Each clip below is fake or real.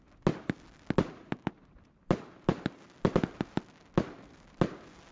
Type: real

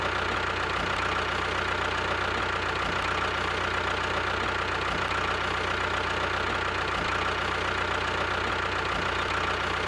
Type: real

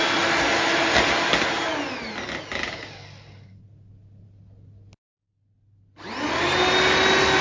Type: real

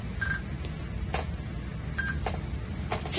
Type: real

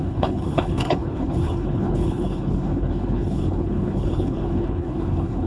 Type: fake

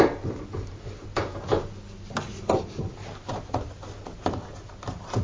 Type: real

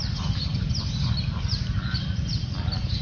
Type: real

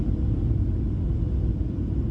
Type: real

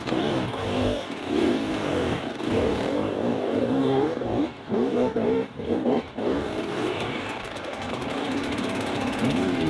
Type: fake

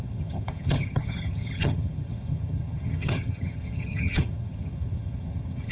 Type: fake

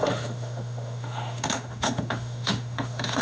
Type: fake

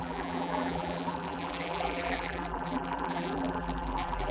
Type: fake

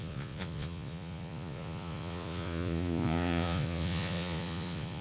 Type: fake